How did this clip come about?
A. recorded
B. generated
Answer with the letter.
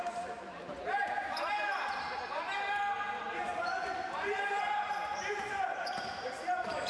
B